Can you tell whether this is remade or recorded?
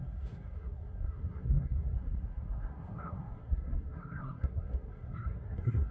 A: remade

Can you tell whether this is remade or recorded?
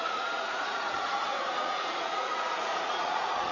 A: remade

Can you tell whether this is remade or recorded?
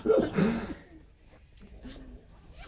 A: recorded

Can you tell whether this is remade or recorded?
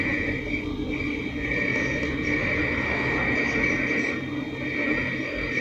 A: recorded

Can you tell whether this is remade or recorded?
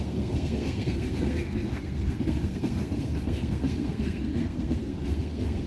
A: remade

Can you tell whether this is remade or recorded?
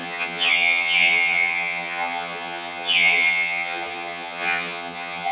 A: remade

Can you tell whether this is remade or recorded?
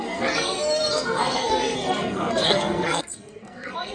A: remade